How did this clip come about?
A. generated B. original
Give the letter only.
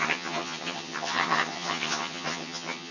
A